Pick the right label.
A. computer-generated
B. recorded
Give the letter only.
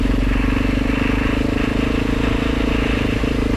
B